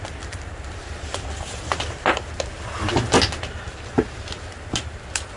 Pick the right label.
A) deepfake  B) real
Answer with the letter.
B